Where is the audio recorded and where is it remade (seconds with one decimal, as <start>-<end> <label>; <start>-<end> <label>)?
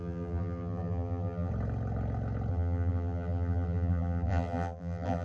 0.0-1.5 remade; 1.5-2.5 recorded; 2.5-5.2 remade